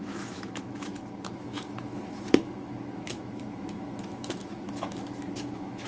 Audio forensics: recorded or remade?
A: remade